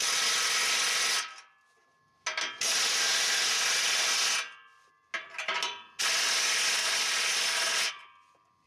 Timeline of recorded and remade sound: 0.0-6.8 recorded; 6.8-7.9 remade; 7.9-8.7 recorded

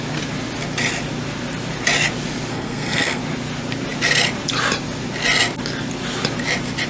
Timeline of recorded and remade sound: 0.0-2.5 recorded; 2.5-3.2 remade; 3.2-6.9 recorded

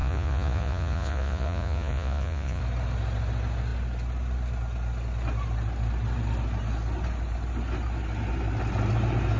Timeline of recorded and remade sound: 0.0-2.6 remade; 2.6-9.4 recorded

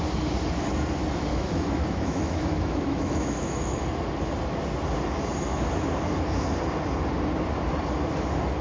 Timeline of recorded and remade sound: 0.0-1.3 recorded; 1.3-3.8 remade; 3.8-8.6 recorded

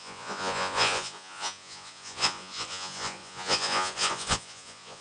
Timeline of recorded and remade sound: 0.0-5.0 remade

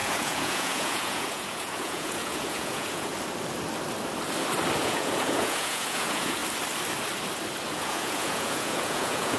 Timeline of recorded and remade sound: 0.0-3.1 remade; 3.1-4.8 recorded; 4.8-6.4 remade; 6.4-7.7 recorded; 7.7-9.4 remade